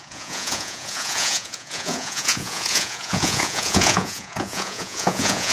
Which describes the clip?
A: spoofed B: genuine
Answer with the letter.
A